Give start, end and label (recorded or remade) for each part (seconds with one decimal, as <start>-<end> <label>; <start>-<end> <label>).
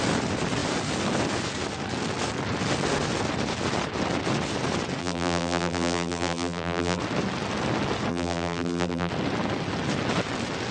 0.0-5.0 recorded; 5.0-7.0 remade; 7.0-8.1 recorded; 8.1-9.1 remade; 9.1-10.7 recorded